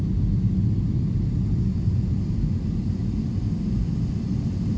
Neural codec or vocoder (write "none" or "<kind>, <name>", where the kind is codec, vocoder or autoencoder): none